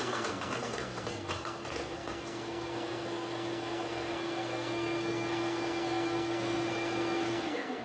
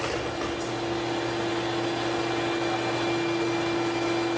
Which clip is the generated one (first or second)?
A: first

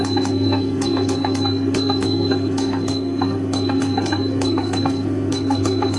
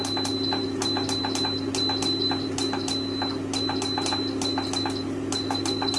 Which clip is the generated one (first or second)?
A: first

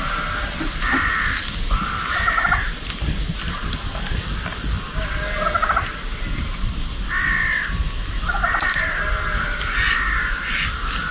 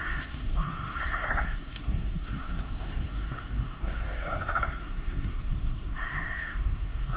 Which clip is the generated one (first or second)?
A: second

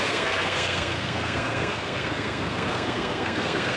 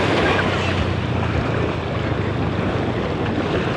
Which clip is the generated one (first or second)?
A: first